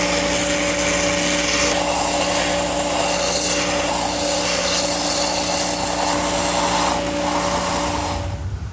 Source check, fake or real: real